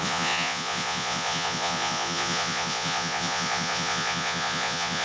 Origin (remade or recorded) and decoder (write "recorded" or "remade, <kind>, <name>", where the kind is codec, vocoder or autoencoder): remade, vocoder, Vocos